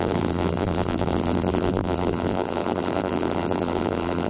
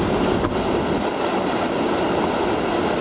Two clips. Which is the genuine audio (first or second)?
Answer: second